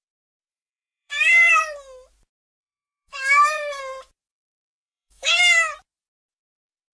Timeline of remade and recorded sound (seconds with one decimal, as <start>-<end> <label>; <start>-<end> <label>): 0.0-0.5 recorded; 0.5-1.5 remade; 1.5-2.6 recorded; 2.6-3.8 remade; 3.8-4.3 recorded; 4.3-5.4 remade; 5.4-6.9 recorded